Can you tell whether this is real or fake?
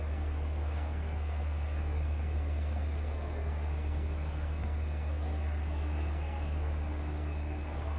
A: fake